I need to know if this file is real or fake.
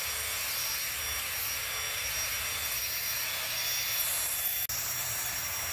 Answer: real